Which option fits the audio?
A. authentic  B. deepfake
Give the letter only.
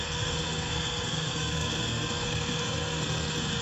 B